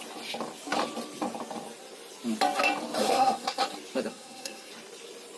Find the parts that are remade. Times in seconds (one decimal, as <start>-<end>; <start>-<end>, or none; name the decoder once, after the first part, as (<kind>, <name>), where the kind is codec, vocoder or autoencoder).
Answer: 3.0-3.6 (codec, SNAC); 4.1-4.7